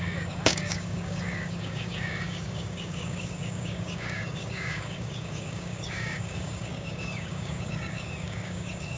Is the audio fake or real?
fake